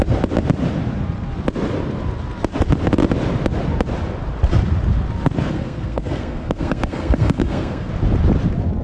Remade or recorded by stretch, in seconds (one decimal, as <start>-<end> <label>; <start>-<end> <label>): 0.0-5.5 recorded; 5.5-7.9 remade; 7.9-8.8 recorded